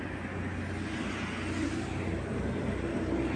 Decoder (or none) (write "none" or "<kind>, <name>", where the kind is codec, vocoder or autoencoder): none